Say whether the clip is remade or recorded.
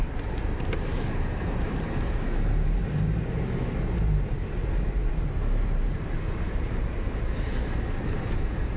remade